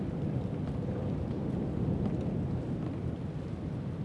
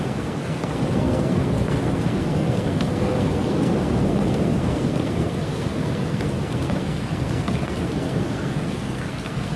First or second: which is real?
first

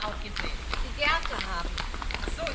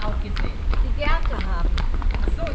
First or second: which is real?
first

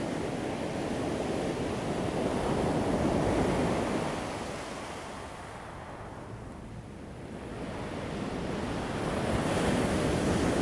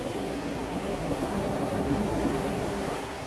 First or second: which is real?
first